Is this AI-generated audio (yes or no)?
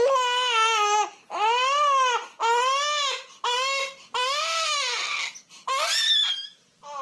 no